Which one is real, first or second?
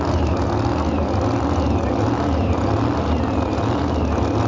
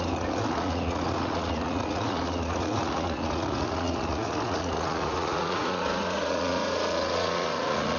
first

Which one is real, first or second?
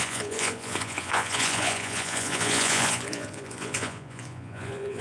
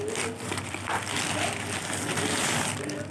second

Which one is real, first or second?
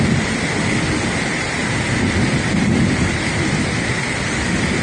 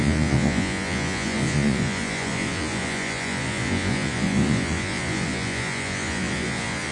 first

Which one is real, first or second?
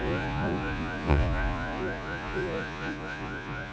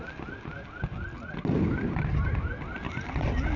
second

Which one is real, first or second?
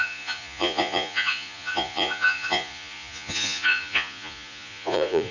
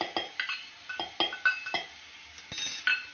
second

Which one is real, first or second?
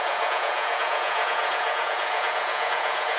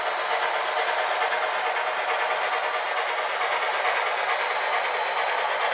second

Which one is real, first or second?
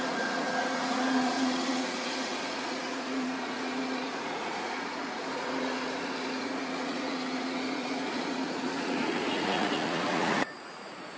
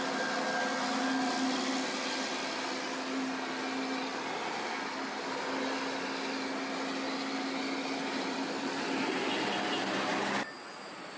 second